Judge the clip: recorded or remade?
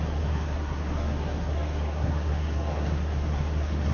remade